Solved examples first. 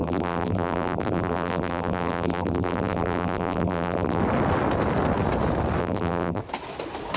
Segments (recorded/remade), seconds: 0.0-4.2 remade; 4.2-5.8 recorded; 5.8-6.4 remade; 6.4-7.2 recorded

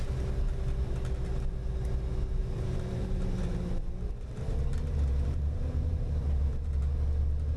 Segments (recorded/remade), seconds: 0.0-2.4 recorded; 2.4-6.9 remade; 6.9-7.6 recorded

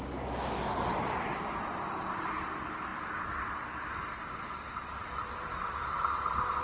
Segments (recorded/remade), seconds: 0.0-4.8 recorded; 4.8-5.8 remade; 5.8-6.6 recorded

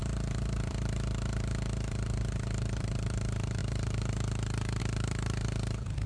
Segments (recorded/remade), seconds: 0.0-6.1 remade

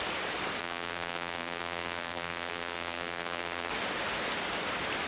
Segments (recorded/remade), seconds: 0.0-0.6 recorded; 0.6-3.7 remade; 3.7-5.1 recorded

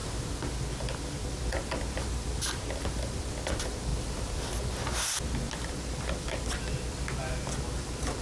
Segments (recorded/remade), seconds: 0.0-8.2 recorded

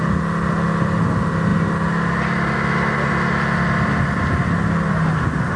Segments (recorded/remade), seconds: 0.0-5.6 recorded